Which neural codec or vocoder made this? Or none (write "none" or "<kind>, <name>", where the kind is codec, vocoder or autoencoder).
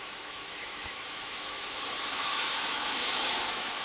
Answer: autoencoder, DAC-VAE